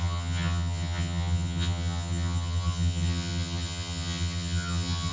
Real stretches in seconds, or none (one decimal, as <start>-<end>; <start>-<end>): none